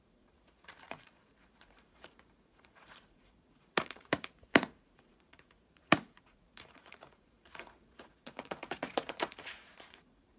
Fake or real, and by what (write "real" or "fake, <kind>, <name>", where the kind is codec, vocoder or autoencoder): fake, vocoder, Vocos